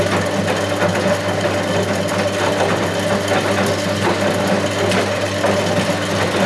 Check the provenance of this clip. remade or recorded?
recorded